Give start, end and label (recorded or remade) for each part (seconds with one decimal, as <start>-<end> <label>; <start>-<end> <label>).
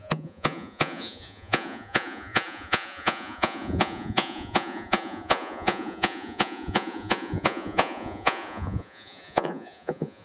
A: 0.0-10.2 remade